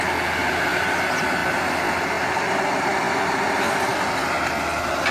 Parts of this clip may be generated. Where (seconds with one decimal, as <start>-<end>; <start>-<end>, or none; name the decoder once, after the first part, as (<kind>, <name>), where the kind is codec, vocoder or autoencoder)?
none